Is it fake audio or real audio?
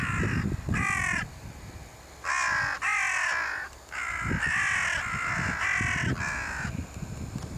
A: real